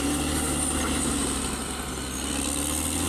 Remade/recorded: recorded